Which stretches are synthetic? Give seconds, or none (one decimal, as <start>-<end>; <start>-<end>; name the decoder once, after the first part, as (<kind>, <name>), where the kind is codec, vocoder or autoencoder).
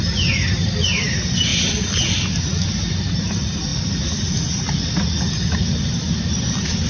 none